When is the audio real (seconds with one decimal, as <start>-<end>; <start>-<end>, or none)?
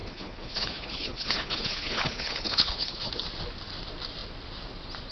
3.1-5.1